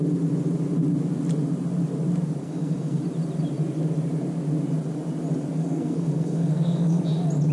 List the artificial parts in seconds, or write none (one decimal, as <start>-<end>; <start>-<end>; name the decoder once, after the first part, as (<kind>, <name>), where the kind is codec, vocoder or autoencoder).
2.4-3.0 (codec, SNAC); 5.6-7.0